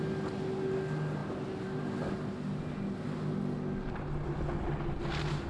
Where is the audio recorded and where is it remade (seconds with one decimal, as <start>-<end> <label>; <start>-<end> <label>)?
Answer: 0.0-5.5 recorded